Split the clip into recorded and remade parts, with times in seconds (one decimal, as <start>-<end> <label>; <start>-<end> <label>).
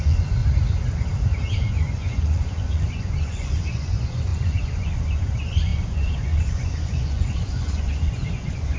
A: 0.0-0.4 remade; 0.4-1.5 recorded; 1.5-8.8 remade